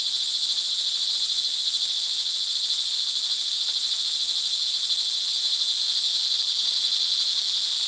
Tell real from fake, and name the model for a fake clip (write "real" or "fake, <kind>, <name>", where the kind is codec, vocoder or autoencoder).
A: real